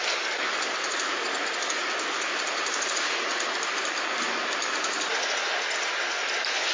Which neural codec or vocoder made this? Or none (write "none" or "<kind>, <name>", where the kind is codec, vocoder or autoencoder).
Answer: none